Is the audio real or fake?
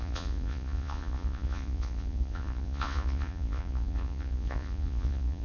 fake